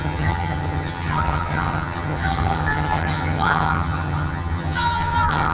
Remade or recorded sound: remade